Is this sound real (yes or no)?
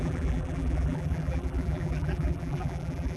no